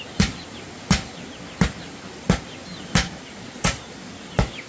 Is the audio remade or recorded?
recorded